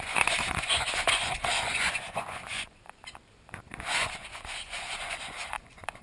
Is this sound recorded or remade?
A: remade